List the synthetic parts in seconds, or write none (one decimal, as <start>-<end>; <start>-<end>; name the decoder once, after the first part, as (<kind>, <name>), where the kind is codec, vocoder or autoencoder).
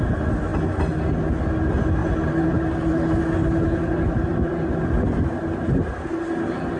2.0-3.2 (vocoder, BigVGAN v2)